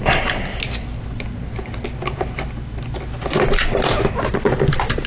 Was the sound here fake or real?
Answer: real